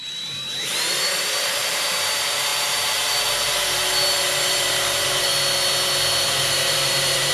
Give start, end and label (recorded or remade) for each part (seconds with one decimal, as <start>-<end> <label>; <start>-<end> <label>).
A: 0.0-5.3 remade; 5.3-6.4 recorded; 6.4-7.3 remade